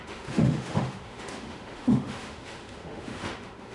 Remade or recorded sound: remade